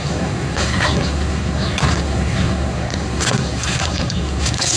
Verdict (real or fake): fake